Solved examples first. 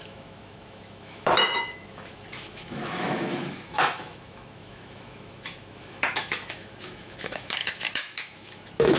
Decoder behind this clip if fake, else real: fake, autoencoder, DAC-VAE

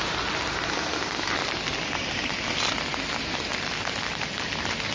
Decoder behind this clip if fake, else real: real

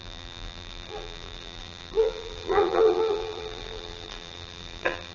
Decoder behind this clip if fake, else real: fake, vocoder, BigVGAN v2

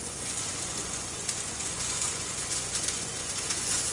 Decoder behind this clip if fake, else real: fake, vocoder, Vocos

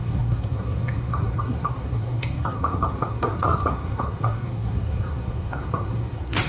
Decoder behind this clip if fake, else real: fake, codec, SNAC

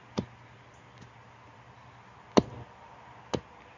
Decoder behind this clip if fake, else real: real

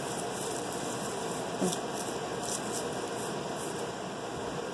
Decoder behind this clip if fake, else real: real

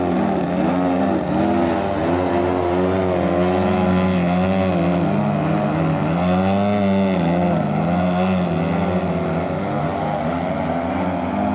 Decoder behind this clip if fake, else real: real